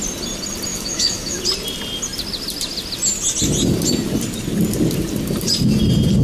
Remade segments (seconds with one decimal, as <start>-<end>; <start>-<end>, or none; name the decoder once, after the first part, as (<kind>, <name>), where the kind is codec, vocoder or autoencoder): 0.7-1.4 (autoencoder, DAC-VAE)